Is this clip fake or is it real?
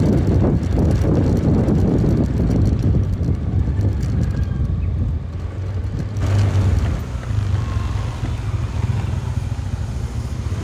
real